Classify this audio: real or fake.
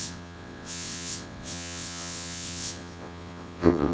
fake